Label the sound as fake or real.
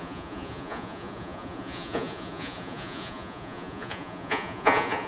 fake